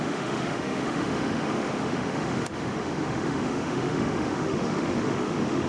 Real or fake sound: fake